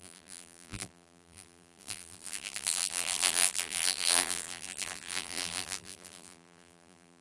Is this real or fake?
fake